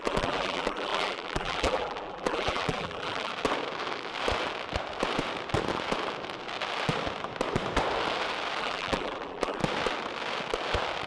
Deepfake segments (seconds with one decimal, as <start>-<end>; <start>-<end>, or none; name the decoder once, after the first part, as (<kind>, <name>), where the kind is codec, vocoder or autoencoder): 0.0-3.3 (vocoder, BigVGAN v2); 8.6-9.6